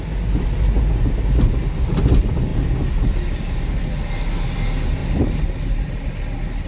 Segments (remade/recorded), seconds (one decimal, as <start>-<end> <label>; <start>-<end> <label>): 0.0-6.7 recorded